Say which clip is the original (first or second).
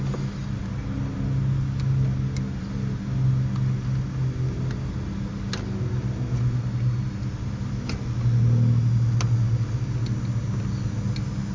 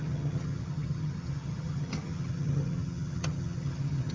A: first